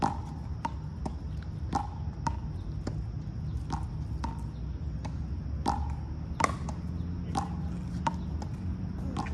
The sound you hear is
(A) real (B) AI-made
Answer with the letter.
A